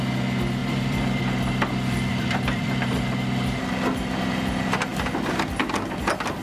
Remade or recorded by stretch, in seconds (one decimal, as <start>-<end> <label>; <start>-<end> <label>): 0.0-0.6 recorded; 0.6-1.2 remade; 1.2-2.1 recorded; 2.1-2.9 remade; 2.9-4.9 recorded; 4.9-5.6 remade; 5.6-6.4 recorded